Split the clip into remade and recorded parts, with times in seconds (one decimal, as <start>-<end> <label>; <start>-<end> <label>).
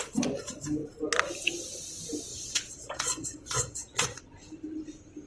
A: 0.0-2.3 recorded; 2.3-4.2 remade; 4.2-5.3 recorded